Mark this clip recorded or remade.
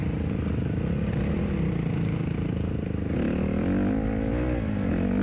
recorded